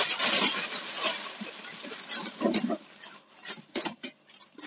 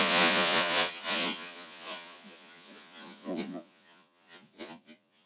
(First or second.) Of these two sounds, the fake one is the second